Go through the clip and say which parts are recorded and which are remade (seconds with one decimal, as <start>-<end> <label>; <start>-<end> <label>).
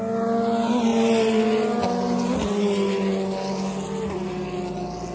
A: 0.0-5.1 recorded